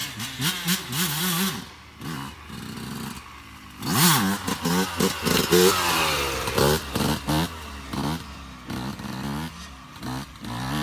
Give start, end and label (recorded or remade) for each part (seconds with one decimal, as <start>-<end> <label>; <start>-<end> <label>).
0.0-10.8 recorded